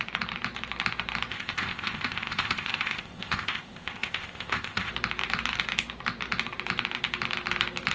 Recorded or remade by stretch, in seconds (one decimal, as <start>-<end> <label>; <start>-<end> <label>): 0.0-1.3 recorded; 1.3-4.9 remade; 4.9-7.9 recorded